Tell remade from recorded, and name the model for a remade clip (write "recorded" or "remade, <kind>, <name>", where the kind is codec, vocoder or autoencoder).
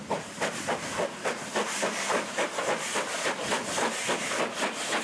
recorded